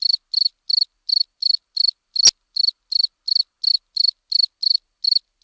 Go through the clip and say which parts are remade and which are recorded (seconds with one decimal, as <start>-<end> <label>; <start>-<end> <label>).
0.0-5.4 recorded